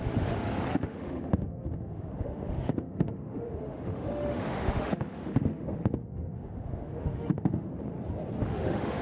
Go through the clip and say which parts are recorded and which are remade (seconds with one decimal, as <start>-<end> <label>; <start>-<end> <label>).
0.0-7.7 remade; 7.7-8.4 recorded; 8.4-9.0 remade